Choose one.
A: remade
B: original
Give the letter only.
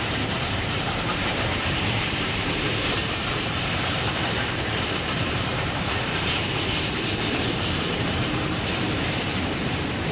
A